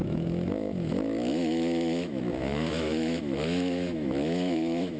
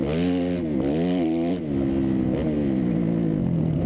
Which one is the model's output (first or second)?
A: first